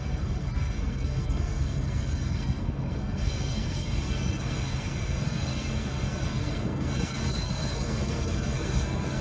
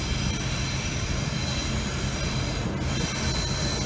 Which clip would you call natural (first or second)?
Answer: second